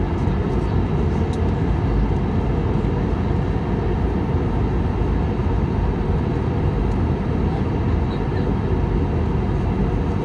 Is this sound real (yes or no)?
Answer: yes